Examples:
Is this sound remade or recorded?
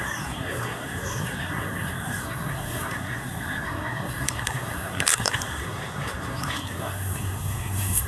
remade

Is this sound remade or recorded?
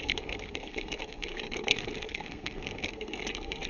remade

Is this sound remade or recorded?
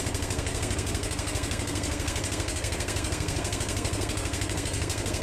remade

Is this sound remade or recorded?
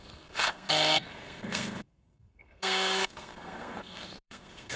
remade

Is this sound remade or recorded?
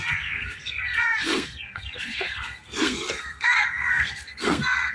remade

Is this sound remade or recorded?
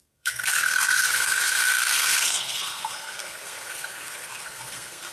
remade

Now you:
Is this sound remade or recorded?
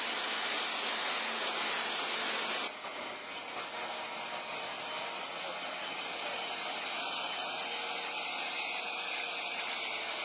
recorded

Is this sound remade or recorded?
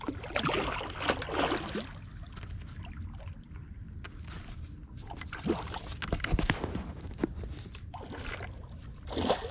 recorded